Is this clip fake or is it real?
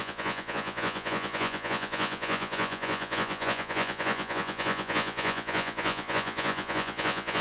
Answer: fake